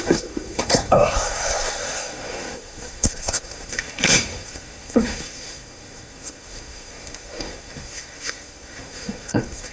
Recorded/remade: remade